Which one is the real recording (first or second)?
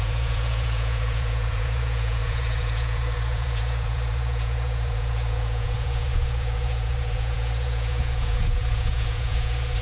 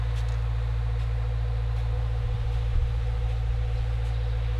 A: second